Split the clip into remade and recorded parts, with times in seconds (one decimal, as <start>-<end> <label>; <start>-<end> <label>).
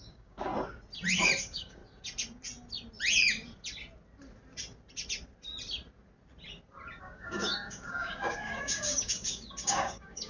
0.0-0.5 remade; 0.5-1.4 recorded; 1.4-1.8 remade; 1.8-7.0 recorded; 7.0-10.3 remade